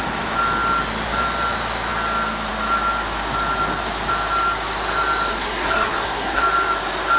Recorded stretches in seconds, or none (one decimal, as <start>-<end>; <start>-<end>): 0.0-5.3; 6.4-7.2